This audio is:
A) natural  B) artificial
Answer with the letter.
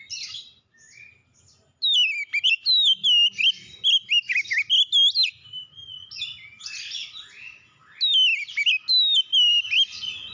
A